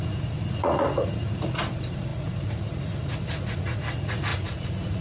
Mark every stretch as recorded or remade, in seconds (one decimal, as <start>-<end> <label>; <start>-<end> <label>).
0.0-5.0 remade